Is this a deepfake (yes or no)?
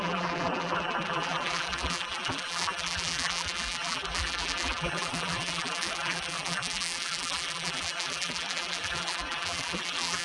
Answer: yes